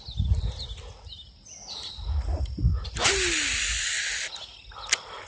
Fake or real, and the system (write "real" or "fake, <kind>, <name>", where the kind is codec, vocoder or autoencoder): real